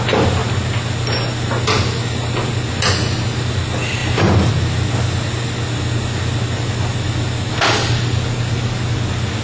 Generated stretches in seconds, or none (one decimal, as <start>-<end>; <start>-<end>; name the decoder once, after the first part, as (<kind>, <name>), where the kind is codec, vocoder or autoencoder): 4.0-4.5 (vocoder, BigVGAN v2)

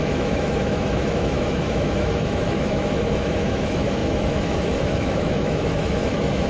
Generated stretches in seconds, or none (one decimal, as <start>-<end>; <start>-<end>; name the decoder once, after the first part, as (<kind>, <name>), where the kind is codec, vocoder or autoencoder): 0.0-6.5 (autoencoder, DAC-VAE)

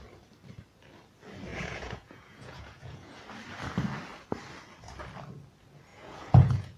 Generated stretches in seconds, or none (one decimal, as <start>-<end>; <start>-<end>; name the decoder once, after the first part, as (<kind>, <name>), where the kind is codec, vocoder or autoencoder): 1.5-3.2 (vocoder, Vocos); 5.9-6.8

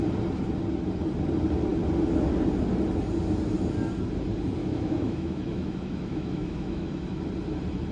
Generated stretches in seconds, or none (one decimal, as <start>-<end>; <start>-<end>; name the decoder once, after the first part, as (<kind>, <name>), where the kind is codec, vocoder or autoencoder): 4.6-7.2 (autoencoder, DAC-VAE)